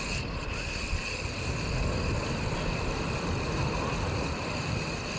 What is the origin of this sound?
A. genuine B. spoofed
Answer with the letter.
A